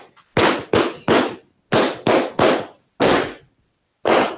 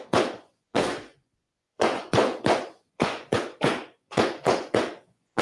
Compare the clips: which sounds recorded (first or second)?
first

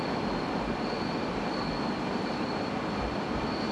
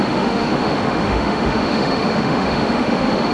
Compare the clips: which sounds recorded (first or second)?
first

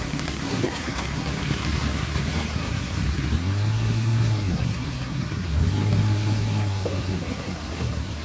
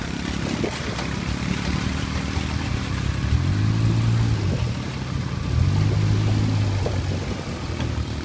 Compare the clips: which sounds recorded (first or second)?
second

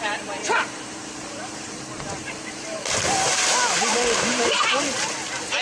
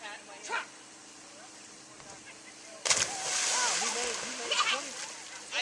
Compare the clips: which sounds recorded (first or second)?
second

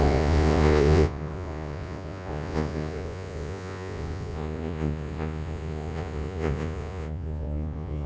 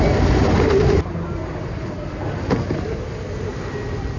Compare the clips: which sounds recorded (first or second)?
second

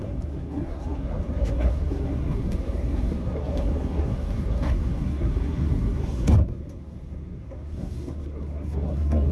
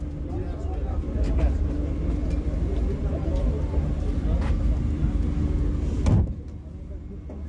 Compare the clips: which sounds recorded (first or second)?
second